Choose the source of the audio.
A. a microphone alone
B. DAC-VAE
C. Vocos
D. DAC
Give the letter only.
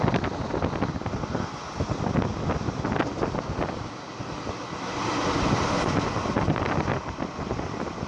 A